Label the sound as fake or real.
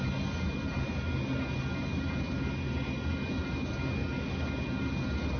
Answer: real